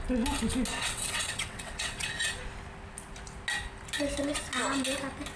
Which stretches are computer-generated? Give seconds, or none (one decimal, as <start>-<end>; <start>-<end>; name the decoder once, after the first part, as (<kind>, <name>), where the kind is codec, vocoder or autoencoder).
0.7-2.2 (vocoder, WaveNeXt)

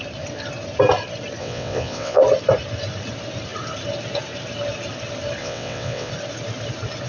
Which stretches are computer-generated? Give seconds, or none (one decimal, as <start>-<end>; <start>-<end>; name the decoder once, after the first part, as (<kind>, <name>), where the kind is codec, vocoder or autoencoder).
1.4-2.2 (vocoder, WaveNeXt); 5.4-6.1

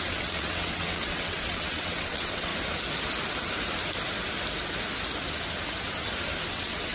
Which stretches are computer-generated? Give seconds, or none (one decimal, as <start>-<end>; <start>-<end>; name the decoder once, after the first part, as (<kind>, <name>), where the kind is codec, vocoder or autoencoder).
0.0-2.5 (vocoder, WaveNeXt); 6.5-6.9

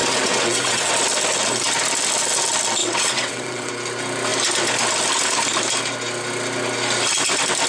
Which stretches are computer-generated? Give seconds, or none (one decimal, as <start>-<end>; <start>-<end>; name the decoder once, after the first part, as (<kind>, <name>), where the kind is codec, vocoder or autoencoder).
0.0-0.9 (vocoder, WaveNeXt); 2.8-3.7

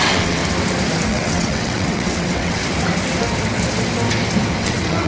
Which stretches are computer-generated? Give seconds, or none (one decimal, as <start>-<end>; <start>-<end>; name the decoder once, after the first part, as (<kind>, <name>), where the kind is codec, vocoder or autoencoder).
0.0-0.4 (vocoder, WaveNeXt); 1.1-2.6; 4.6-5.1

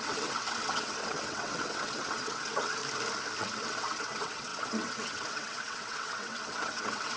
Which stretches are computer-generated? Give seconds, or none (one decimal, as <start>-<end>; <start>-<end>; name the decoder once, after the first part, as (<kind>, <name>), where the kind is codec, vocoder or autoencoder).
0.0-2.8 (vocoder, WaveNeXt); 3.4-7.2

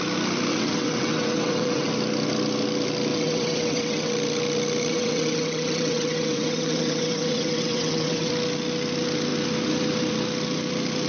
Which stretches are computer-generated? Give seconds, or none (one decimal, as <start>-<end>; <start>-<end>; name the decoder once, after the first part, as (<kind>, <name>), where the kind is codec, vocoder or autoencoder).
0.5-1.9 (vocoder, WaveNeXt); 3.1-4.1; 4.9-8.3